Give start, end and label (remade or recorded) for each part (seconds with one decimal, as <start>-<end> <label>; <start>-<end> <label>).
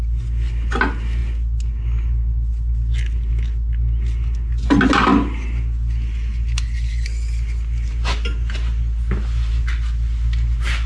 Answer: 0.0-10.9 recorded